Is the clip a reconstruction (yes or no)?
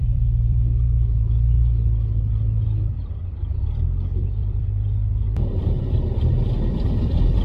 yes